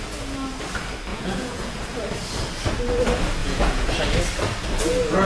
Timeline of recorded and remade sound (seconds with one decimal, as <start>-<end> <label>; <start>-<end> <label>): 0.0-1.1 recorded; 1.1-1.8 remade; 1.8-3.4 recorded; 3.4-3.9 remade; 3.9-5.2 recorded